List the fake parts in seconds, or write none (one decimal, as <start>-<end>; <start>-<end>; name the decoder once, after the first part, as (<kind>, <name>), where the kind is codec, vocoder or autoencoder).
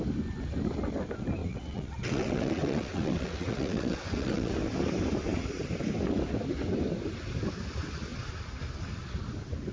1.4-4.5 (vocoder, WaveNeXt)